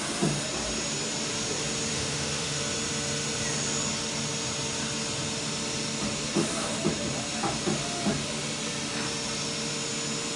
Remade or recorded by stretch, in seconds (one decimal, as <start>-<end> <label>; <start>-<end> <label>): 0.0-1.9 recorded; 1.9-2.6 remade; 2.6-10.4 recorded